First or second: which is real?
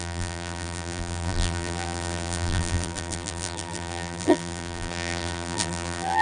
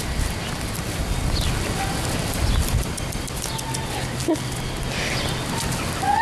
second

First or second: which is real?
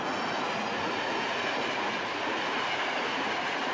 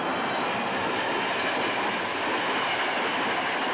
second